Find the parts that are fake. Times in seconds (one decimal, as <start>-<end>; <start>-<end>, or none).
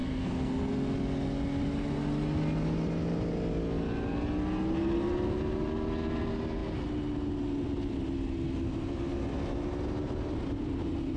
0.0-0.5